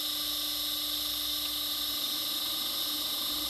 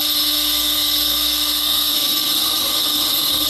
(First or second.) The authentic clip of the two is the first